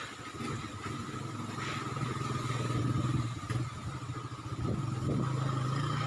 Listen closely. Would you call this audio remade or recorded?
recorded